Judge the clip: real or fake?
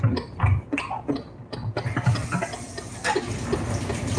real